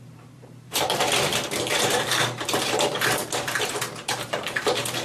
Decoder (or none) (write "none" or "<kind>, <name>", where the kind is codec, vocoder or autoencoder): vocoder, BigVGAN v2